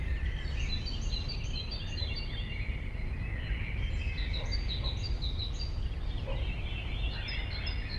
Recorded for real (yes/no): yes